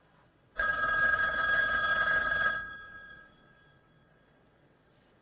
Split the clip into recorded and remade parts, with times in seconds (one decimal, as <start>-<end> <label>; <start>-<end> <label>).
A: 0.0-5.2 remade